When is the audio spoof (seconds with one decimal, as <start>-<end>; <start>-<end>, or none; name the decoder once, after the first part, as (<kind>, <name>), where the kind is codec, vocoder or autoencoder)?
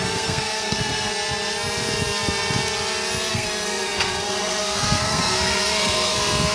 0.0-1.1 (codec, SNAC); 3.3-6.5